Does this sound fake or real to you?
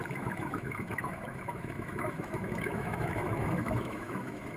fake